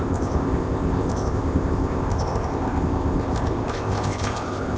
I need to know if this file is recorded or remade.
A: remade